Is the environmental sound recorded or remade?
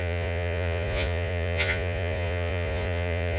remade